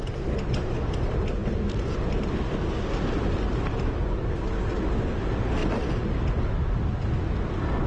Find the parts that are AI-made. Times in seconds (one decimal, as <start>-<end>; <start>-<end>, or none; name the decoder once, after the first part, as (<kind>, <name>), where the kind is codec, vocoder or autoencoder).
none